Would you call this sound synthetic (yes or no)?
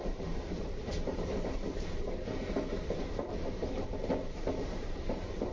yes